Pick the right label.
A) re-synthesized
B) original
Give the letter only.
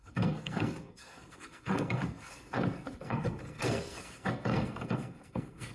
A